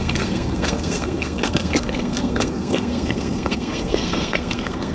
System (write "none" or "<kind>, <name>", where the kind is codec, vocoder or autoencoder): codec, SNAC